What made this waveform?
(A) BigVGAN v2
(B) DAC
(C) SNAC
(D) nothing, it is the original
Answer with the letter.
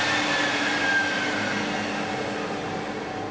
D